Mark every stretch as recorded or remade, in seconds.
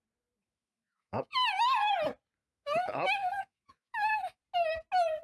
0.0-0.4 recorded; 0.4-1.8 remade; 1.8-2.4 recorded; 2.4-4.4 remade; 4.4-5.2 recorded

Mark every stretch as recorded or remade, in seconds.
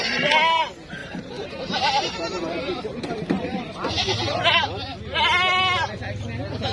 0.0-1.0 recorded; 1.0-4.6 remade; 4.6-6.7 recorded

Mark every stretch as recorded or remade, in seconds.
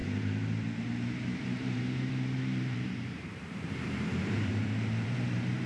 0.0-5.7 remade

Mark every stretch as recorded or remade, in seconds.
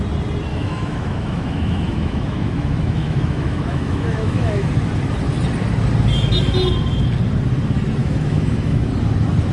0.0-0.5 recorded; 0.5-4.7 remade; 4.7-8.0 recorded; 8.0-8.9 remade; 8.9-9.5 recorded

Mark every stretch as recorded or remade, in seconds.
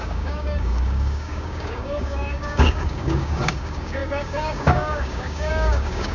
0.0-6.1 remade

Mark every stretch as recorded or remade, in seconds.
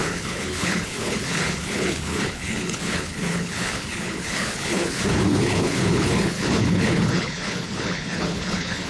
0.0-8.9 remade